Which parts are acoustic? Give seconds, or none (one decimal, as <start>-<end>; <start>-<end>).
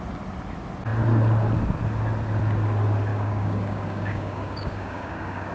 0.0-3.1